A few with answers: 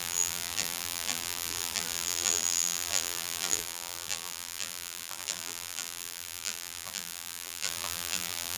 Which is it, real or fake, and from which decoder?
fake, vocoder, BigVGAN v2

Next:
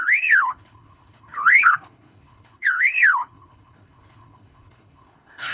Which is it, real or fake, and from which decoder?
fake, codec, HILCodec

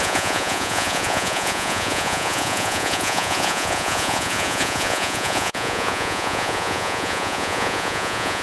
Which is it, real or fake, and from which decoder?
fake, vocoder, Vocos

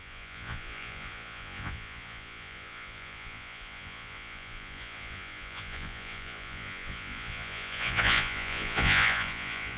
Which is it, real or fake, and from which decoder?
fake, vocoder, Vocos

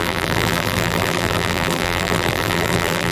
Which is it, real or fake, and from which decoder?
fake, vocoder, BigVGAN v2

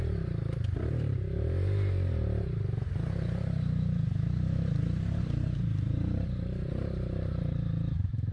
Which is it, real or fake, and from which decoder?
fake, vocoder, BigVGAN v2